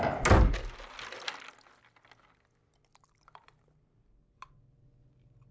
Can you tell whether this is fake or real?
real